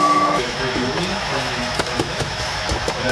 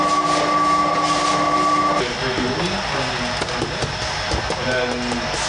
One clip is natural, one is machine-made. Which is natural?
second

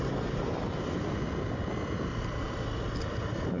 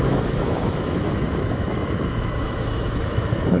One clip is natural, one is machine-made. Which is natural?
first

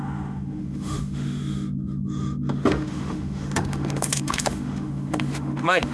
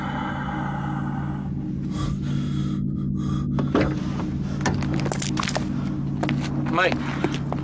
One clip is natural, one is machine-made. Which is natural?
second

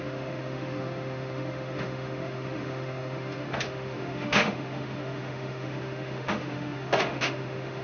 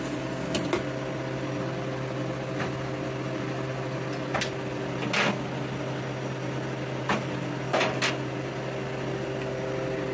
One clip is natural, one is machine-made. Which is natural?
second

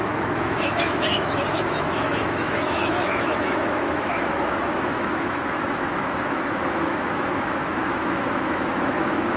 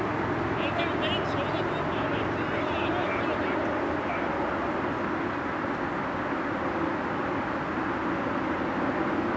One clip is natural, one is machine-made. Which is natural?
second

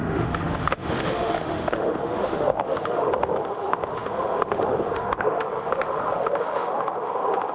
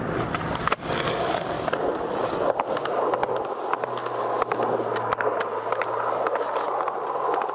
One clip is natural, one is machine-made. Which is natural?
second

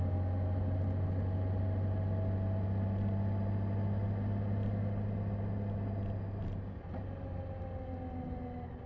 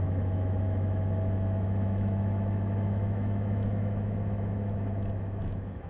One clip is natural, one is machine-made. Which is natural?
first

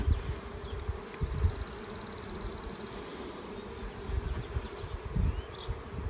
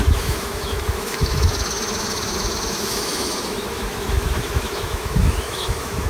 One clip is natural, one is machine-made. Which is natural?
first